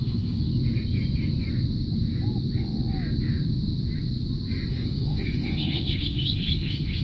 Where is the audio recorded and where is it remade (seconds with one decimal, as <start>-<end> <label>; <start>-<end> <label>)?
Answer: 0.0-0.5 remade; 0.5-4.7 recorded; 4.7-7.0 remade